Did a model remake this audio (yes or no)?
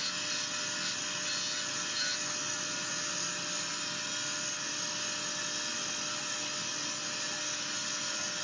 no